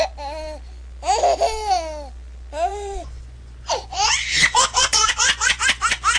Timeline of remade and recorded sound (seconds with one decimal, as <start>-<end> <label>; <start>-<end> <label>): 0.0-2.7 recorded; 2.7-5.6 remade; 5.6-6.2 recorded